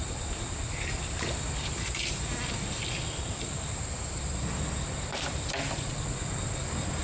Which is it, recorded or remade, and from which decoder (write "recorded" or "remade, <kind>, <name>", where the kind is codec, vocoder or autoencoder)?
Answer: recorded